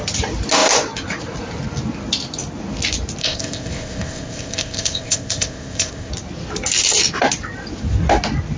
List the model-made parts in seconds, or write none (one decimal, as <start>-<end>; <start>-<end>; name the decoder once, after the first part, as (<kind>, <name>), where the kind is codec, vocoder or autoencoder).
3.2-6.1 (codec, ZipCodec)